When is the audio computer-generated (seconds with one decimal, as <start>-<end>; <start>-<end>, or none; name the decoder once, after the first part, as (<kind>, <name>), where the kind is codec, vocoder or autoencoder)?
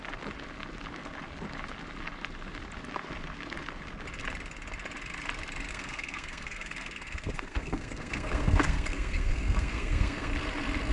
5.7-10.3 (codec, SNAC)